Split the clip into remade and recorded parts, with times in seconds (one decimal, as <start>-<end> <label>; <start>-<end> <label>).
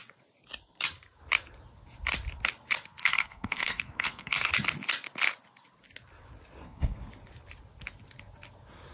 0.0-3.0 recorded; 3.0-4.5 remade; 4.5-6.6 recorded; 6.6-7.1 remade; 7.1-8.9 recorded